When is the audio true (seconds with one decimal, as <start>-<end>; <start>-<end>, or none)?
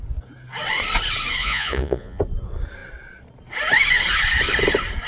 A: 0.0-1.4; 2.2-5.1